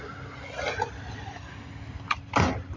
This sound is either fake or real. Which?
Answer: real